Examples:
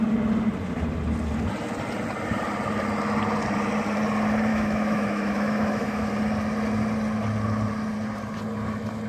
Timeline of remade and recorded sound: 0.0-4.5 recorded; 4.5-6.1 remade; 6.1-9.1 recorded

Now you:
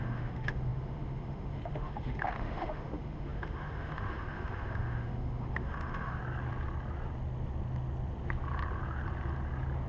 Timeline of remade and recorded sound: 0.0-6.2 remade; 6.2-9.9 recorded

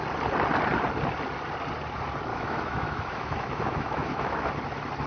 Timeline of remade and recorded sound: 0.0-2.3 recorded; 2.3-4.5 remade; 4.5-5.1 recorded

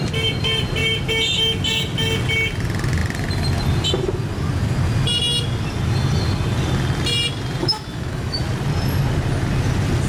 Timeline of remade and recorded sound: 0.0-7.6 recorded; 7.6-8.4 remade; 8.4-10.1 recorded

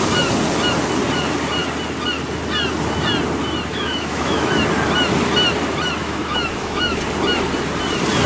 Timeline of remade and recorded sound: 0.0-3.7 recorded; 3.7-4.5 remade; 4.5-6.0 recorded; 6.0-7.0 remade; 7.0-8.3 recorded

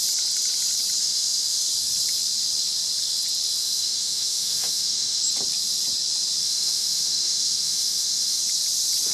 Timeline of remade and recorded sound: 0.0-1.0 recorded; 1.0-1.6 remade; 1.6-3.6 recorded; 3.6-5.2 remade; 5.2-6.4 recorded; 6.4-8.4 remade; 8.4-9.1 recorded

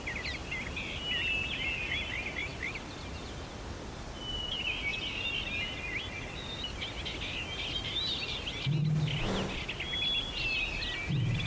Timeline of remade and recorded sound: 0.0-11.5 recorded